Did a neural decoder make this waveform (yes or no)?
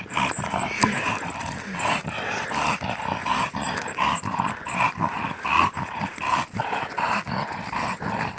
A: no